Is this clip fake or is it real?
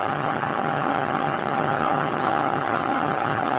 fake